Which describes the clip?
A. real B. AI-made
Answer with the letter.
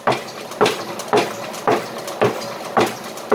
A